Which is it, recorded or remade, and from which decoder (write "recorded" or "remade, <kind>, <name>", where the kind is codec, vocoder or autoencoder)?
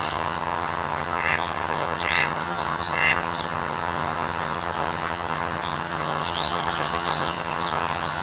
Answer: remade, vocoder, HiFi-GAN